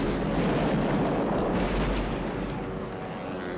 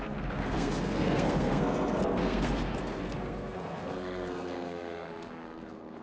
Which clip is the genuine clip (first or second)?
first